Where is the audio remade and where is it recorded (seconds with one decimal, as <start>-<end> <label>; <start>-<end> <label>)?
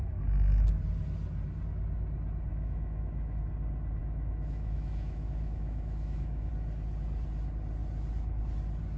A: 0.0-2.5 recorded; 2.5-3.5 remade; 3.5-4.0 recorded; 4.0-6.5 remade; 6.5-9.0 recorded